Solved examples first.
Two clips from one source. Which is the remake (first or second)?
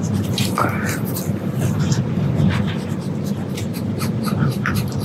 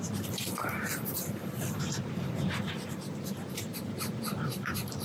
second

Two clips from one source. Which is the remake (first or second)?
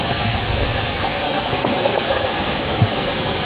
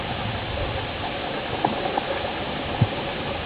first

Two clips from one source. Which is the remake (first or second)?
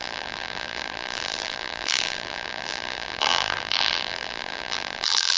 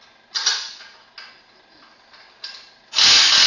first